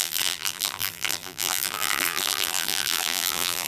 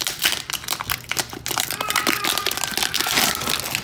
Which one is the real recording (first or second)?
second